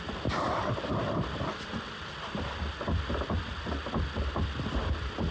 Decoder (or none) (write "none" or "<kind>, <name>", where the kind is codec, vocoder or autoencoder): none